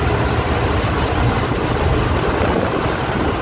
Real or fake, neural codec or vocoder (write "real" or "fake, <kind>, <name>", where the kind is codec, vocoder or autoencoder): real